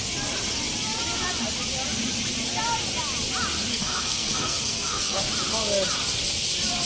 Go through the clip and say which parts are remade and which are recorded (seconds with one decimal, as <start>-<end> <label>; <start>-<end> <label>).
0.0-3.7 recorded; 3.7-5.2 remade; 5.2-6.9 recorded

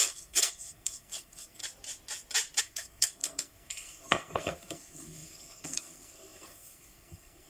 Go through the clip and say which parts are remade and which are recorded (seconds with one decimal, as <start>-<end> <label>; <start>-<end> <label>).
0.0-1.6 remade; 1.6-2.6 recorded; 2.6-7.5 remade

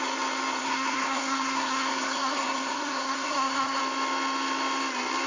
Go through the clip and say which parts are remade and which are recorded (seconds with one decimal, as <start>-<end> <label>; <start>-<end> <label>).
0.0-0.6 recorded; 0.6-3.8 remade; 3.8-5.3 recorded

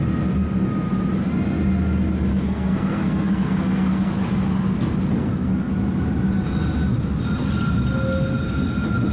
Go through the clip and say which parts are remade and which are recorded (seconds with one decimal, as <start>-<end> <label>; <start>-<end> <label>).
0.0-2.3 recorded; 2.3-4.1 remade; 4.1-5.1 recorded; 5.1-5.7 remade; 5.7-9.1 recorded

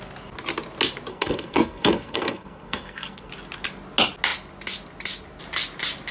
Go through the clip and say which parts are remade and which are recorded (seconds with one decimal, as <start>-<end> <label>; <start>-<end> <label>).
0.0-1.1 recorded; 1.1-3.3 remade; 3.3-6.1 recorded

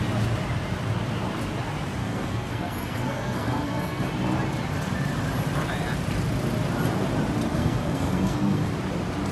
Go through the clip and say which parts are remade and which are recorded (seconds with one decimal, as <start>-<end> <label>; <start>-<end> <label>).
0.0-2.0 recorded; 2.0-4.1 remade; 4.1-7.5 recorded; 7.5-8.7 remade; 8.7-9.3 recorded

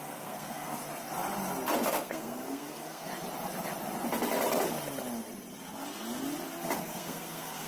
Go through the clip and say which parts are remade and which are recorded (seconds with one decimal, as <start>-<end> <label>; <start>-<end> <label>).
0.0-0.8 remade; 0.8-1.9 recorded; 1.9-3.1 remade; 3.1-6.8 recorded; 6.8-7.7 remade